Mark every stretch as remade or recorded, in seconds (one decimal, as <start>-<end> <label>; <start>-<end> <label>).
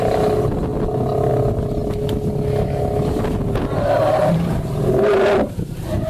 0.0-6.1 recorded